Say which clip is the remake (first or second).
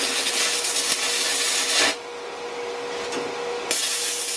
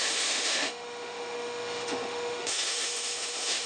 second